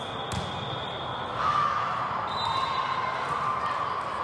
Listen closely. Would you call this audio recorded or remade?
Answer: recorded